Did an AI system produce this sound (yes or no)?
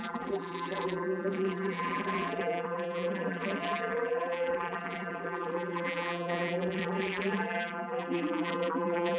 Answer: yes